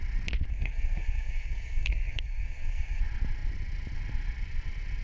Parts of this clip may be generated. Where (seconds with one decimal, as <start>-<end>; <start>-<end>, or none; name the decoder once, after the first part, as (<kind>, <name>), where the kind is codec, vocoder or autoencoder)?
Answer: 0.5-3.0 (codec, SNAC)